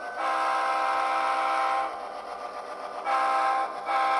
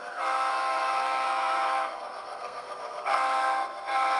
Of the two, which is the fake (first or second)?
second